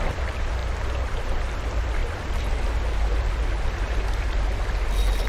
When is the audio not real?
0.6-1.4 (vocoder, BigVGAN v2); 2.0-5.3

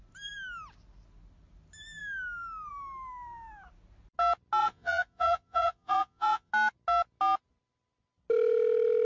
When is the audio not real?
4.6-6.5 (vocoder, Vocos)